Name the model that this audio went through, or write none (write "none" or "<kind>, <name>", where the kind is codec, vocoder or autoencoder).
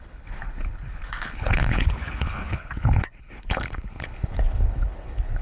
codec, HILCodec